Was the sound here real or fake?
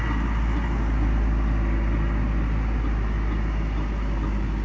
real